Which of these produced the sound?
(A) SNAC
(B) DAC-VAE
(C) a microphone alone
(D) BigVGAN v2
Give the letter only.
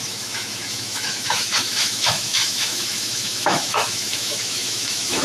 B